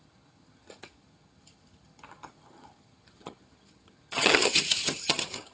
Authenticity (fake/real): fake